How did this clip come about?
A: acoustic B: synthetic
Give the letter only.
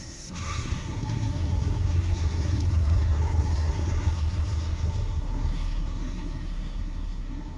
B